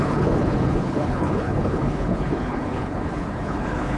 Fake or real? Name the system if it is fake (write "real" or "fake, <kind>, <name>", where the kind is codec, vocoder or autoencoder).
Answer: fake, codec, HILCodec